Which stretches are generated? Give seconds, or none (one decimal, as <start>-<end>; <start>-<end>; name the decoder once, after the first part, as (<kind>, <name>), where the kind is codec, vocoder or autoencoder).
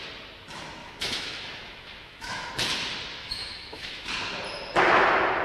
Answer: 0.8-2.5 (autoencoder, DAC-VAE); 3.2-4.1